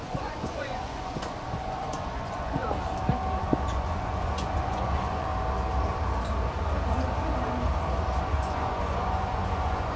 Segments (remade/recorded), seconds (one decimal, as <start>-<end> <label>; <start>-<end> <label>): 0.0-2.6 remade; 2.6-3.4 recorded; 3.4-5.3 remade; 5.3-8.3 recorded; 8.3-10.0 remade